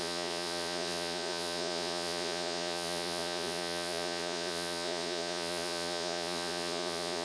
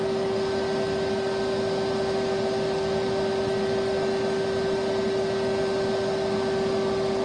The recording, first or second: second